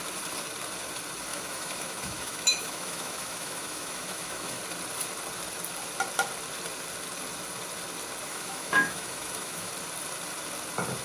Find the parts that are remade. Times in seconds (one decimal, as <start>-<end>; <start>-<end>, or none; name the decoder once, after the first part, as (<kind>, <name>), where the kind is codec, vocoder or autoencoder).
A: 1.3-4.6 (autoencoder, DAC-VAE); 8.3-9.7